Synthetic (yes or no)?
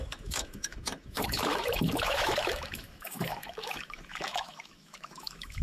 yes